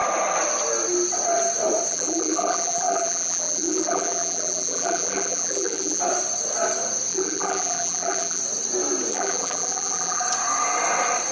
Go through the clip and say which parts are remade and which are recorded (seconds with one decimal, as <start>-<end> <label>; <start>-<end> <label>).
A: 0.0-1.9 recorded; 1.9-6.0 remade; 6.0-7.1 recorded; 7.1-8.4 remade; 8.4-9.1 recorded; 9.1-10.2 remade; 10.2-11.3 recorded